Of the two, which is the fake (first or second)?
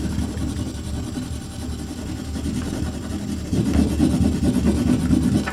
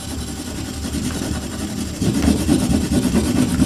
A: second